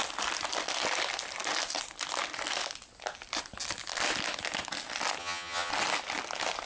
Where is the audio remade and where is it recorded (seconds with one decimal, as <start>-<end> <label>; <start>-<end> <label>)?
0.0-5.2 recorded; 5.2-5.7 remade; 5.7-6.7 recorded